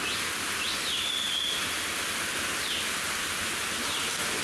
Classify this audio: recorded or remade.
recorded